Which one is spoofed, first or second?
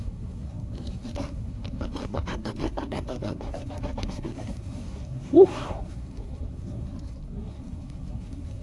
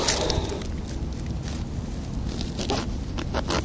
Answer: first